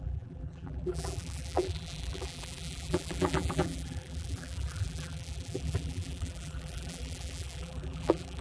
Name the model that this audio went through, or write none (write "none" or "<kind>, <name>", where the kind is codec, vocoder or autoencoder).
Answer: vocoder, BigVGAN v2